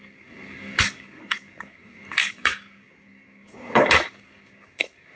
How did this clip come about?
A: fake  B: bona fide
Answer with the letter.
A